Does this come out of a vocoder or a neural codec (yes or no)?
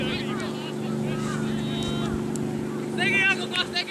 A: no